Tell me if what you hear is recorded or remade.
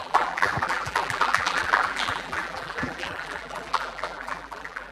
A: remade